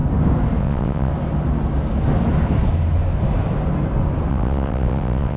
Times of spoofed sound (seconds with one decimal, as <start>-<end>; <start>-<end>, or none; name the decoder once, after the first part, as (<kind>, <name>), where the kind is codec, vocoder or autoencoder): 0.6-1.1 (vocoder, WaveNeXt); 4.3-5.4